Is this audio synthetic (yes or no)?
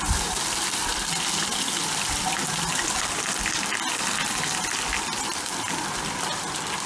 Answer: no